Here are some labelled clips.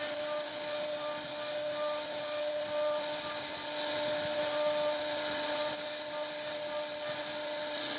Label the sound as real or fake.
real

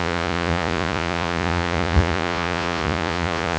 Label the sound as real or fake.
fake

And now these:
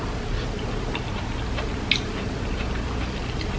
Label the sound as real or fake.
real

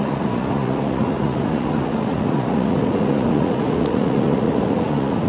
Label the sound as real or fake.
fake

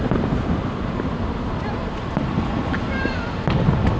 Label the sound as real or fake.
fake